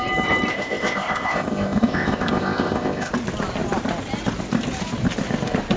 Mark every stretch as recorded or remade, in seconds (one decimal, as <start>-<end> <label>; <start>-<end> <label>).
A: 0.0-0.5 recorded; 0.5-3.1 remade; 3.1-5.8 recorded